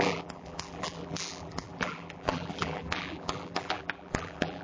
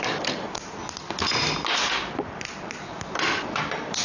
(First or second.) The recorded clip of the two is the second